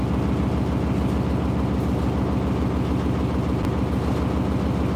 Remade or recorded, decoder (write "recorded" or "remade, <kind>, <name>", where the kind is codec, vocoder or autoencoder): recorded